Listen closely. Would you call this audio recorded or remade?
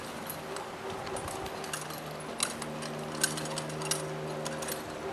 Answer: recorded